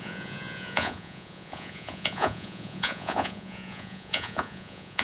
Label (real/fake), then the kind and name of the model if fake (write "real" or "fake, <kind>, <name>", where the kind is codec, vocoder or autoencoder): fake, vocoder, Vocos